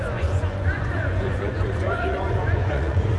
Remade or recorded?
remade